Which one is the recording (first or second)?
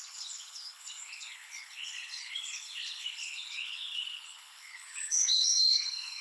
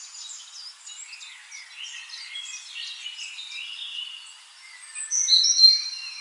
second